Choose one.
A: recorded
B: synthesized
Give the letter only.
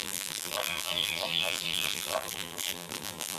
B